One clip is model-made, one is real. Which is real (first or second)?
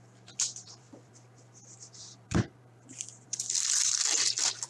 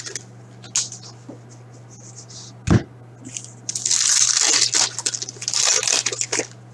second